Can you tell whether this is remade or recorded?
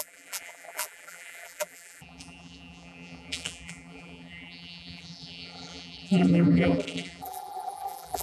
remade